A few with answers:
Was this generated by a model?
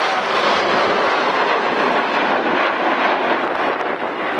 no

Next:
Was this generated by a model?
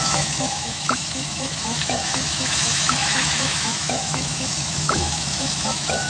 yes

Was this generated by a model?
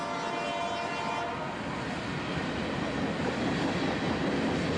no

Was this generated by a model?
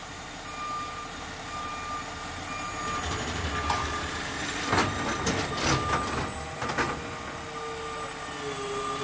no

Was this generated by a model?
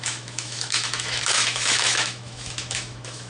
yes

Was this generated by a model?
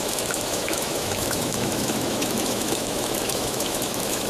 yes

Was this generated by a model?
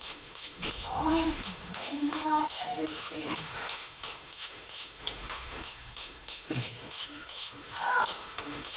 yes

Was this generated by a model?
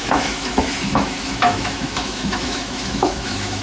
yes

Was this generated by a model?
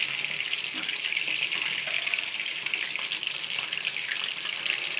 no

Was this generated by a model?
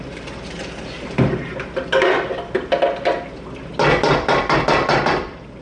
no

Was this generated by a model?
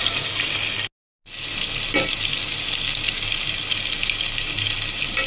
no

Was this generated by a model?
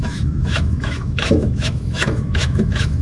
yes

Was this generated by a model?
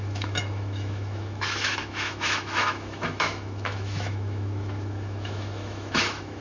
yes